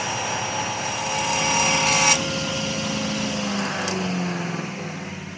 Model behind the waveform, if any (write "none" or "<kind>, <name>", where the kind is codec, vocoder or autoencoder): none